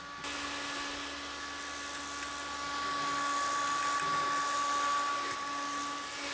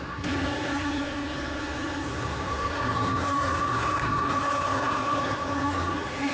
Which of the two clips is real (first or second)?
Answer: first